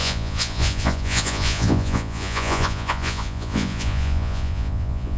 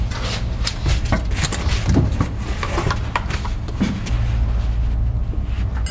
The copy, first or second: first